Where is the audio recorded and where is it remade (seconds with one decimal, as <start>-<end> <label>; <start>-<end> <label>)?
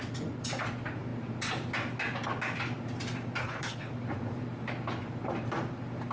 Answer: 0.0-3.4 recorded; 3.4-3.9 remade; 3.9-6.1 recorded